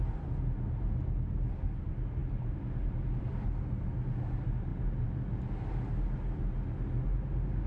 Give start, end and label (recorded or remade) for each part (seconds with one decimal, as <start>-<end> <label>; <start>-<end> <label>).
0.0-7.7 recorded